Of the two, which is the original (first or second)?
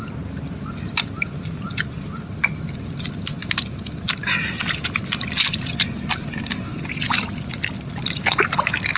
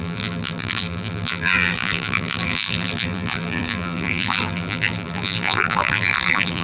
first